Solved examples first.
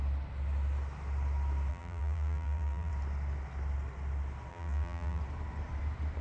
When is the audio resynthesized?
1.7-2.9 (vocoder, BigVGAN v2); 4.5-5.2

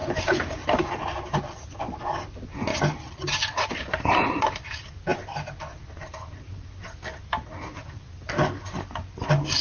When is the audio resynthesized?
0.0-1.8 (vocoder, BigVGAN v2); 2.7-3.9; 7.8-8.6

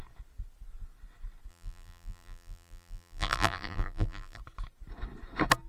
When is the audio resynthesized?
1.5-4.4 (vocoder, BigVGAN v2)

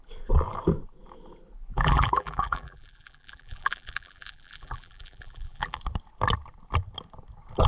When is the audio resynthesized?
1.7-5.8 (vocoder, BigVGAN v2)

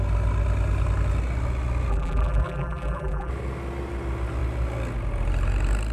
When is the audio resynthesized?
1.9-3.3 (vocoder, BigVGAN v2)

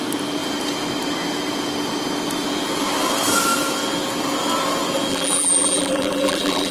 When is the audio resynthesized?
5.1-6.7 (vocoder, BigVGAN v2)

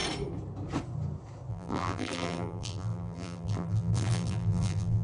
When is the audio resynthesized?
1.5-5.0 (vocoder, BigVGAN v2)

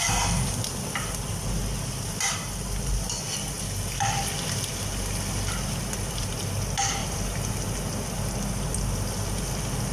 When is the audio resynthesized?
7.0-7.7 (vocoder, BigVGAN v2)